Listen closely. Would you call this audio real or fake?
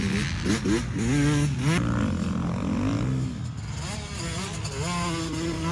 real